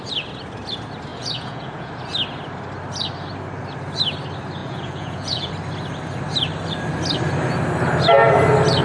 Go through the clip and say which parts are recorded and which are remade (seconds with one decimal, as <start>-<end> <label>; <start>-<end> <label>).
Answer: 0.0-1.1 recorded; 1.1-1.9 remade; 1.9-4.6 recorded; 4.6-5.5 remade; 5.5-8.8 recorded